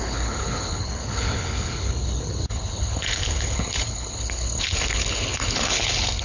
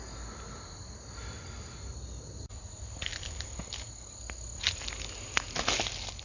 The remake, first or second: first